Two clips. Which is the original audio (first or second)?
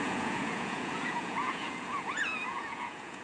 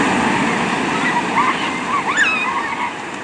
second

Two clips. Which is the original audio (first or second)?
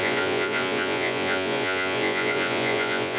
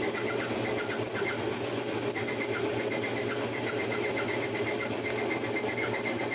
second